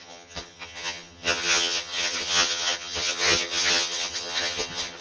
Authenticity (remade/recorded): remade